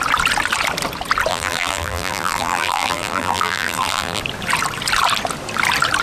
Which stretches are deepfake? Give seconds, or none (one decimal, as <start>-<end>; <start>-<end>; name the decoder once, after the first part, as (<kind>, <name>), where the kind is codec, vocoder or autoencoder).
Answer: 1.3-4.2 (vocoder, BigVGAN v2)